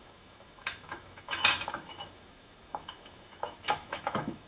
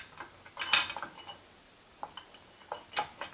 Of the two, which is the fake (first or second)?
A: first